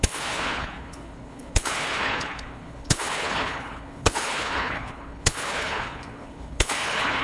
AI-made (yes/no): yes